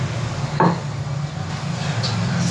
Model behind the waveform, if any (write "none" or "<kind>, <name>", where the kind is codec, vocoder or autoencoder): none